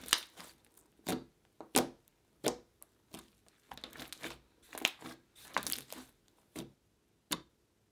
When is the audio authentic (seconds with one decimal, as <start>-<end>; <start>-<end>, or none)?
0.0-7.9